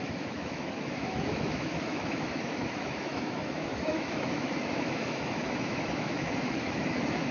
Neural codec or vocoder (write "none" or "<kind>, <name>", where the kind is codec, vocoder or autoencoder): autoencoder, DAC-VAE